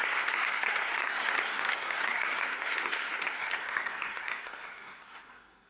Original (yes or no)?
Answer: no